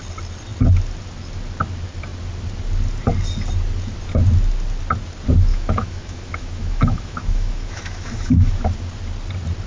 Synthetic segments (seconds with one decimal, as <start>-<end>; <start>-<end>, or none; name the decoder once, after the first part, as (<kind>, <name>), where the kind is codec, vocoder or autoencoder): 5.5-8.5 (autoencoder, DAC-VAE)